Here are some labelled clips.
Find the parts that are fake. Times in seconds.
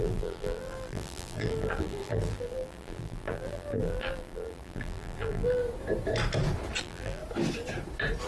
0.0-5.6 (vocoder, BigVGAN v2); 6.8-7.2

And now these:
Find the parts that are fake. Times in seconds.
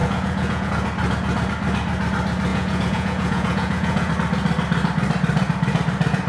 0.0-0.7 (vocoder, Vocos); 2.5-4.1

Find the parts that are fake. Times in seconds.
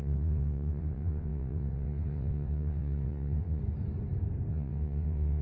0.0-3.6 (vocoder, WaveNeXt); 4.5-5.4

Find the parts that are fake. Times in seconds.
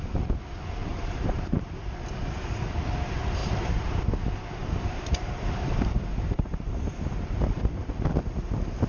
0.9-1.7 (vocoder, BigVGAN v2); 3.4-4.0; 4.6-7.6